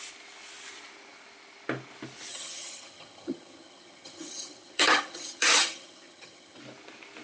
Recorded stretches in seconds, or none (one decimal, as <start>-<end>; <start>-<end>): 0.0-2.3; 6.6-7.2

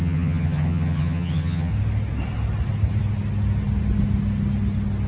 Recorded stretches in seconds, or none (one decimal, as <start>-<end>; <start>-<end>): 1.7-5.1